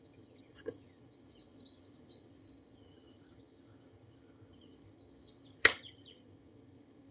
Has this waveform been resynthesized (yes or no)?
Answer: yes